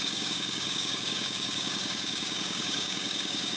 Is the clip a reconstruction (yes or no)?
yes